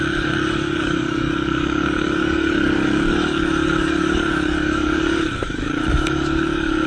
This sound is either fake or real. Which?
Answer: fake